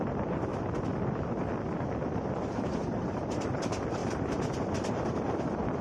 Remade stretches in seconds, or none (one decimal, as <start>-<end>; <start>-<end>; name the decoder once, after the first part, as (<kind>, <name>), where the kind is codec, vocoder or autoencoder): 0.0-0.5 (vocoder, BigVGAN v2); 2.3-5.8